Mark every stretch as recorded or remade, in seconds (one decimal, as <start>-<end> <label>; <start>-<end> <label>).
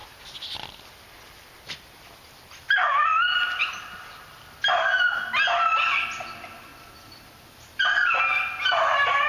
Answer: 0.0-0.9 recorded; 0.9-4.6 remade; 4.6-6.0 recorded; 6.0-6.7 remade; 6.7-8.9 recorded; 8.9-9.3 remade